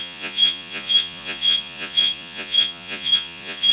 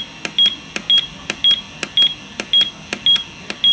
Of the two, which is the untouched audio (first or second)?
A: second